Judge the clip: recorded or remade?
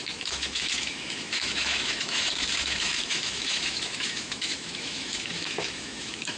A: remade